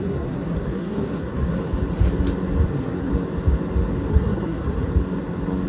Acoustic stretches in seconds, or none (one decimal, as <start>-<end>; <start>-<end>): 1.6-2.7; 3.1-4.1; 4.9-5.7